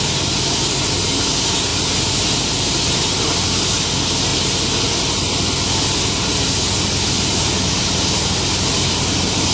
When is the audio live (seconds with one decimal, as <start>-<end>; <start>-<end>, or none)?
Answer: 0.0-9.5